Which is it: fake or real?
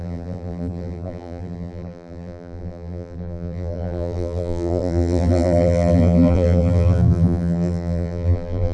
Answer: fake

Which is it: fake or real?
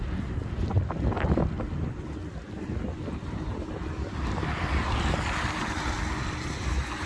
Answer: real